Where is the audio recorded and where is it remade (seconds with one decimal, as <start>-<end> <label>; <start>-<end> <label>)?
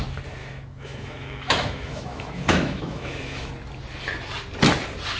0.0-0.4 recorded; 0.4-3.5 remade; 3.5-5.2 recorded